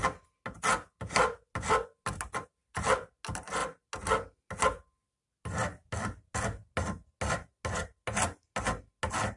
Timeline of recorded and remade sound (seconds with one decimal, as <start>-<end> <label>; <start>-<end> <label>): 0.0-9.4 recorded